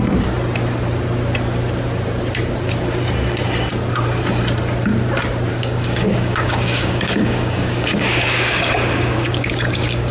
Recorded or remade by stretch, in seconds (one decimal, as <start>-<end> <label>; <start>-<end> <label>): 0.0-5.5 recorded; 5.5-10.1 remade